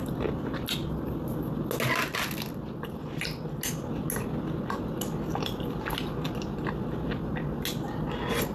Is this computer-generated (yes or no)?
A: no